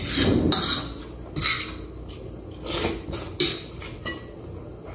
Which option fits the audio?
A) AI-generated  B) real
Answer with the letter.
B